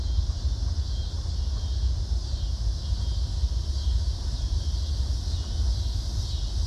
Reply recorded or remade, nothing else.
recorded